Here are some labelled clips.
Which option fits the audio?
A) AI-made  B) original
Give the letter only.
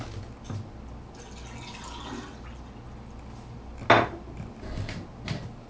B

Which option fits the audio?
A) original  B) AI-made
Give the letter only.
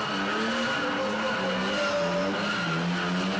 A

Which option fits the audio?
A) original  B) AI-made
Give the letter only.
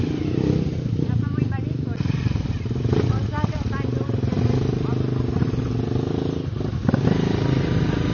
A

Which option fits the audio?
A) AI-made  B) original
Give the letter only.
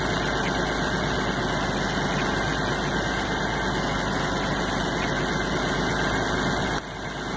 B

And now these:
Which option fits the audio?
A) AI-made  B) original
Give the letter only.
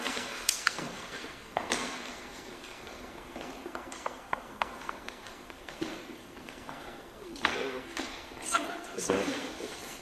A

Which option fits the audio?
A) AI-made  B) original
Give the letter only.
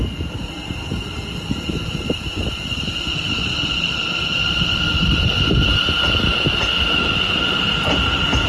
B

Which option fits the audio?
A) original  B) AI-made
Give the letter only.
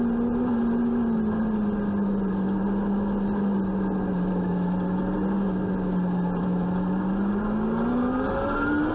A